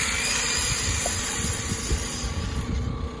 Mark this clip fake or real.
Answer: real